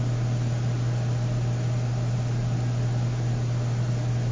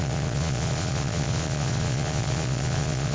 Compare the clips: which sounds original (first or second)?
first